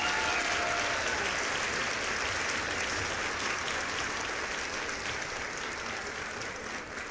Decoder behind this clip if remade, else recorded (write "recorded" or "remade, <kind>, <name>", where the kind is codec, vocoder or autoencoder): recorded